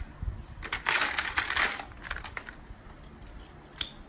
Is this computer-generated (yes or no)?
no